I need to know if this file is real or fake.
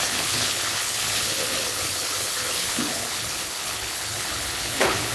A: fake